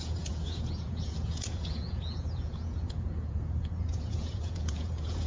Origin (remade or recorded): remade